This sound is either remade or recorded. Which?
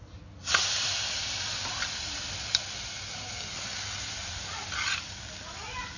recorded